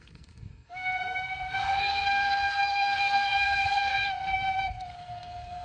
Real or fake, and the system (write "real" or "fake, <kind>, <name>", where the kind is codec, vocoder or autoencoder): fake, codec, SNAC